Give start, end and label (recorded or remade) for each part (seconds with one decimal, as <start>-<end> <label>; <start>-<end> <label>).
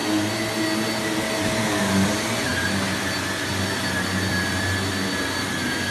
0.0-5.9 recorded